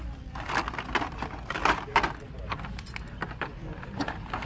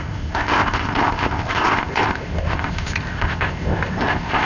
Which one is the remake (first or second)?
second